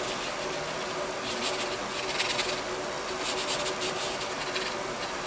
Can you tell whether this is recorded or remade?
recorded